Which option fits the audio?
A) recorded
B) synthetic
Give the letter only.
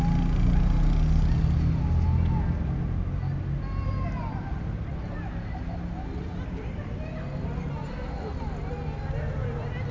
A